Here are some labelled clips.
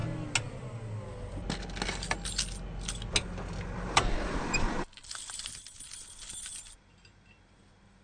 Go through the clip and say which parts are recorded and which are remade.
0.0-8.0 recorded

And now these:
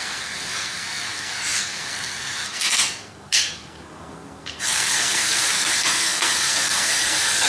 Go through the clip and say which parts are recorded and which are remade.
0.0-7.5 remade

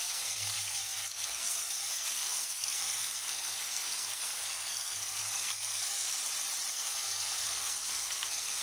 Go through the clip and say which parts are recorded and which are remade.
0.0-6.2 remade; 6.2-6.7 recorded; 6.7-8.6 remade

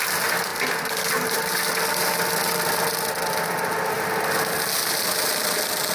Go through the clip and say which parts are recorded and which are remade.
0.0-5.9 recorded

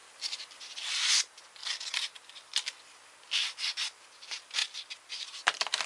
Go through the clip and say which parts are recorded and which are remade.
0.0-5.9 recorded